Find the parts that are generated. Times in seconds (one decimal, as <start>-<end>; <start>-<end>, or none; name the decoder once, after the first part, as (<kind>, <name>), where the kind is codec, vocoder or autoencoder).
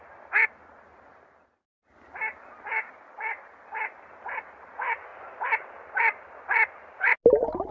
none